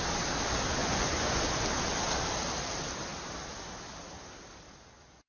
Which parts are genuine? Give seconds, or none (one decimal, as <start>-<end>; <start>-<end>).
0.0-0.8; 1.4-5.3